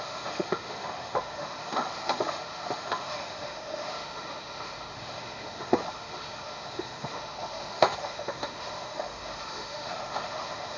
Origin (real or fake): fake